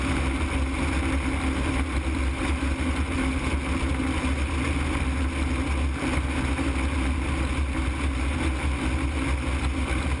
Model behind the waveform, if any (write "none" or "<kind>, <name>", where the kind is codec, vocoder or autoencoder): none